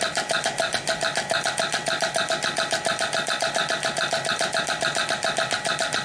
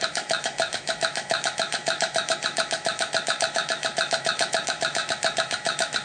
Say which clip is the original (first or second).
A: first